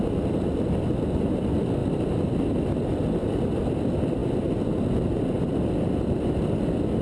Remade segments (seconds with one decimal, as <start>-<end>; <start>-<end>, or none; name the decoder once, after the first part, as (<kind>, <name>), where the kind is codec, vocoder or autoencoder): none